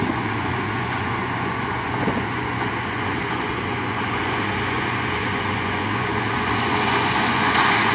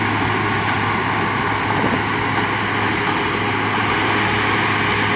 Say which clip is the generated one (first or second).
first